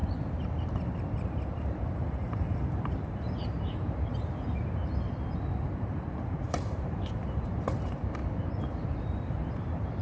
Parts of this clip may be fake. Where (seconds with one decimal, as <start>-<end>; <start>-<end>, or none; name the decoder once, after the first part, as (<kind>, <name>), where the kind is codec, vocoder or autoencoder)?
0.0-4.8 (vocoder, BigVGAN v2); 5.5-8.2; 8.7-10.0